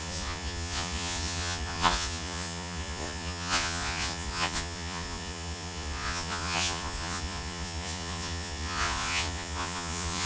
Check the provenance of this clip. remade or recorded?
remade